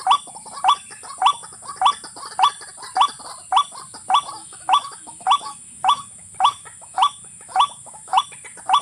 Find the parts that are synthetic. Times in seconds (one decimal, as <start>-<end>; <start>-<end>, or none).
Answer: 4.4-8.2